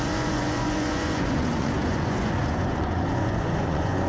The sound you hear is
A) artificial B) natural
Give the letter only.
A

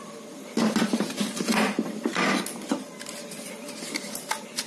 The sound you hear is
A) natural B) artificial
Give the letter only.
A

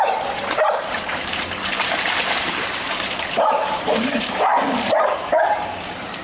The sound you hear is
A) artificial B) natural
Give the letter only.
A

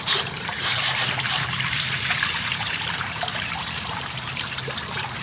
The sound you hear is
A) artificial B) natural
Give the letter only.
A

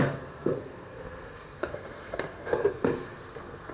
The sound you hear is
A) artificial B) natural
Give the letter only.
A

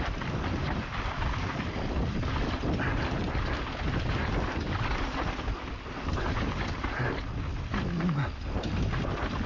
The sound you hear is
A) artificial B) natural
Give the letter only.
B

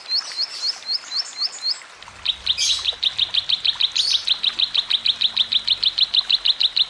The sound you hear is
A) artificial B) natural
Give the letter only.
B